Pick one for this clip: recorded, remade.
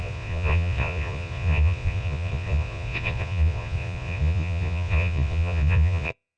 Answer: remade